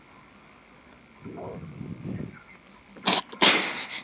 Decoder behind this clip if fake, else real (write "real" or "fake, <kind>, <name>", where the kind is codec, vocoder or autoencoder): real